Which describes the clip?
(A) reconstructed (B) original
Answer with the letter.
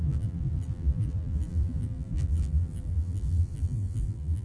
A